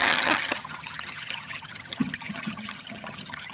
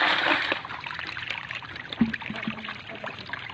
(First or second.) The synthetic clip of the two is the first